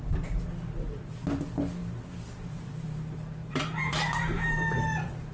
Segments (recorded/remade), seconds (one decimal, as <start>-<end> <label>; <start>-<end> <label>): 0.0-1.8 recorded; 1.8-3.0 remade; 3.0-3.4 recorded; 3.4-5.3 remade